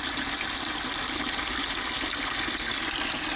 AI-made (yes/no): no